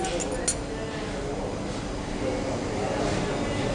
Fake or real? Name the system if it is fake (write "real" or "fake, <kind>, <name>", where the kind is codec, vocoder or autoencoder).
real